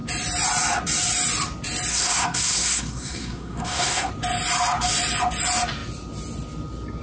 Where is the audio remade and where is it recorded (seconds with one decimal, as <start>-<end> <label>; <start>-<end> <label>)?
0.0-1.9 recorded; 1.9-4.1 remade; 4.1-7.0 recorded